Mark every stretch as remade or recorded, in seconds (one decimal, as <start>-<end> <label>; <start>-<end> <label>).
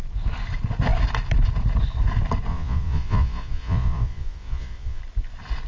0.0-2.5 recorded; 2.5-5.0 remade; 5.0-5.7 recorded